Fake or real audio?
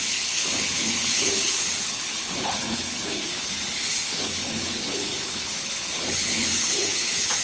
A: fake